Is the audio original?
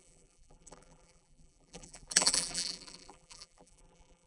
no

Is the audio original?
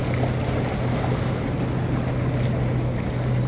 yes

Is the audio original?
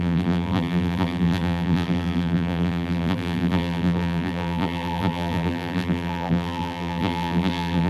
no